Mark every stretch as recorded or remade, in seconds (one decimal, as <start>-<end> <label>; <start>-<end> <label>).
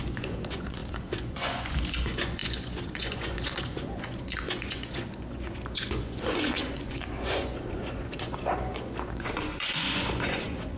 0.0-10.8 remade